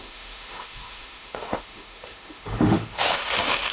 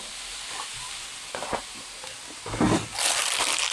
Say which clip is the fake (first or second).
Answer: first